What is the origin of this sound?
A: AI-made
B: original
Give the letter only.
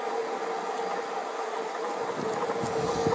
B